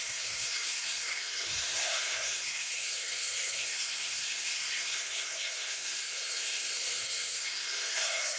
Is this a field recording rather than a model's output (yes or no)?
no